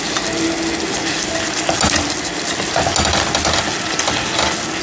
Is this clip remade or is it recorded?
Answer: recorded